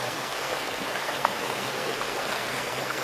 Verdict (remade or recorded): remade